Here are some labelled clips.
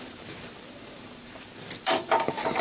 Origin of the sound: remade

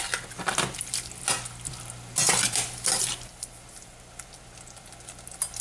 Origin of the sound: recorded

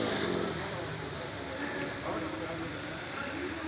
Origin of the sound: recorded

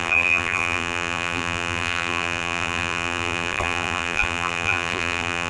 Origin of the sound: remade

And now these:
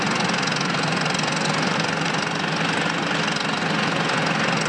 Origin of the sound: recorded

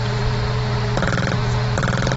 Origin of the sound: remade